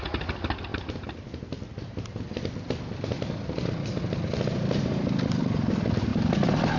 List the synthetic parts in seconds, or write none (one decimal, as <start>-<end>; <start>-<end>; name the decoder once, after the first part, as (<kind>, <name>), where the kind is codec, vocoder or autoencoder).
0.0-6.1 (vocoder, BigVGAN v2)

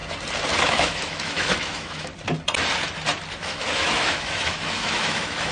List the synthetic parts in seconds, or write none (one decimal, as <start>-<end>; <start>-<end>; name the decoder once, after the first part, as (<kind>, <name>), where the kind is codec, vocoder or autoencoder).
0.6-2.1 (autoencoder, DAC-VAE); 3.3-5.5

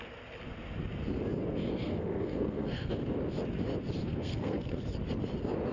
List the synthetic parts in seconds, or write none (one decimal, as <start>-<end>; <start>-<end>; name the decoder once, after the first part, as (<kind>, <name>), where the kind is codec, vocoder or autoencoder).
1.8-2.9 (codec, SNAC); 4.0-4.8

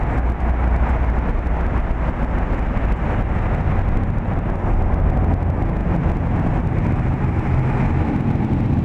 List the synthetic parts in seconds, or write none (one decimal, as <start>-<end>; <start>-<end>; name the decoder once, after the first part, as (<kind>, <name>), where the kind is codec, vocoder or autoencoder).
none

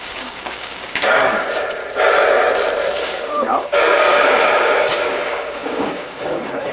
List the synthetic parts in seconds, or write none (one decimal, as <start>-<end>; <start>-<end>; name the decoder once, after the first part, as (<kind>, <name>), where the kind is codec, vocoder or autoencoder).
0.0-1.8 (codec, DAC); 2.9-6.7

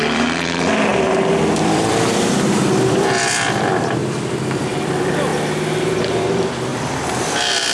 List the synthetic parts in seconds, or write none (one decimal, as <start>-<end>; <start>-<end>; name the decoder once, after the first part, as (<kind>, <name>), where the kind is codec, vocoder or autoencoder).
0.0-4.0 (vocoder, BigVGAN v2); 4.6-5.3; 6.0-6.7; 7.2-7.7

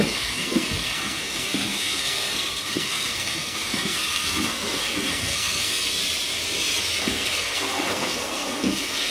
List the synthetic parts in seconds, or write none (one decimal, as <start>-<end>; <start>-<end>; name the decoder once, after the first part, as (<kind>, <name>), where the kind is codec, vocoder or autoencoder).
0.0-6.0 (codec, SNAC); 7.0-9.1